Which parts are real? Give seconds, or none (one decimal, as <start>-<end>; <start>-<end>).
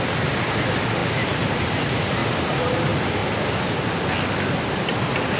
0.0-1.0; 1.8-2.2; 2.8-5.4